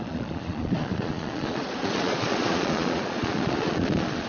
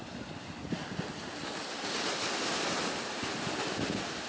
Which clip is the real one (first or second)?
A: second